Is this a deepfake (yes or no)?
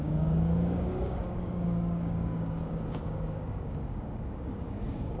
yes